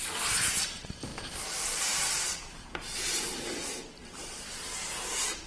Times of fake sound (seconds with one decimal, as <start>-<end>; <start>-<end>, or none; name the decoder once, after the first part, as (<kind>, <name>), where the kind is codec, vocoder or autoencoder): 0.0-3.3 (vocoder, BigVGAN v2); 3.9-5.5